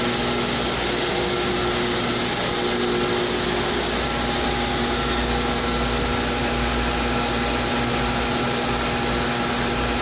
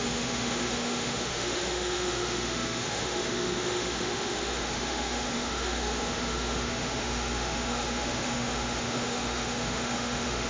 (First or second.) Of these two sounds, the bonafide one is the first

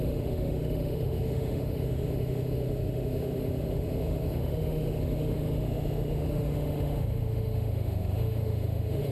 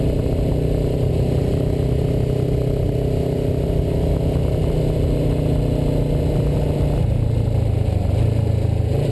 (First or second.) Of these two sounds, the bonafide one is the second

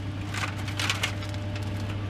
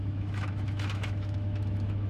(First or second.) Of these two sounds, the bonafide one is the first